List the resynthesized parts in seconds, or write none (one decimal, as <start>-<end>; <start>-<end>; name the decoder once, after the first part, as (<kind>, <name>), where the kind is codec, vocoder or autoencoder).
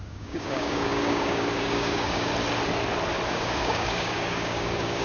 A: 0.0-2.3 (codec, DAC); 3.3-5.0